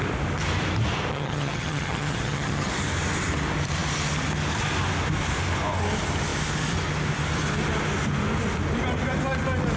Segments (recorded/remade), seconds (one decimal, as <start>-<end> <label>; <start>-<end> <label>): 0.0-1.1 recorded; 1.1-2.7 remade; 2.7-9.8 recorded